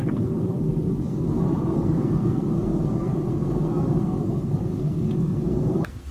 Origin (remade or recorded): remade